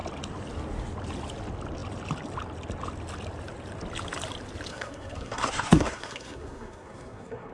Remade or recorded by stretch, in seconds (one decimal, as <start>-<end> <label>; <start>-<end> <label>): 0.0-4.7 recorded; 4.7-7.5 remade